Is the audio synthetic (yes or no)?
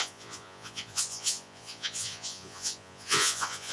yes